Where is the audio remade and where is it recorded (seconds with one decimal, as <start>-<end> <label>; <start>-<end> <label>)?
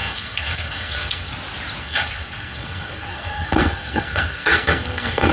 0.0-1.3 remade; 1.3-1.8 recorded; 1.8-5.3 remade